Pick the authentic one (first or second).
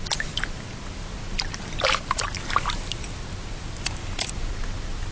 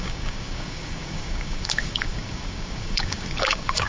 first